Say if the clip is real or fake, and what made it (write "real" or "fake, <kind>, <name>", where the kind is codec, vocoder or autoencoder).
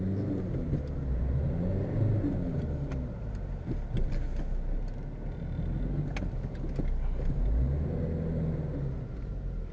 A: real